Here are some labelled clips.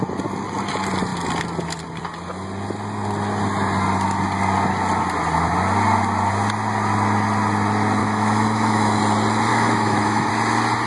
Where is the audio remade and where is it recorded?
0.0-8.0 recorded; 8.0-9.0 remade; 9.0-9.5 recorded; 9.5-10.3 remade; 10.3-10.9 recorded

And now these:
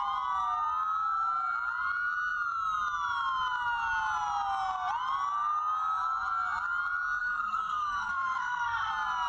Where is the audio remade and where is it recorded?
0.0-7.2 recorded; 7.2-8.9 remade; 8.9-9.3 recorded

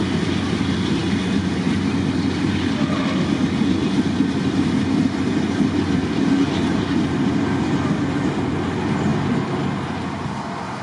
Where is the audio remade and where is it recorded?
0.0-10.8 recorded